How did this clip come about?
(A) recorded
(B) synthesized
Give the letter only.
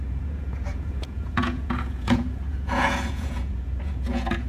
B